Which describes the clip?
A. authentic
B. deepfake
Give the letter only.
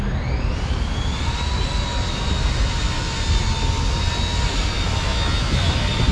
A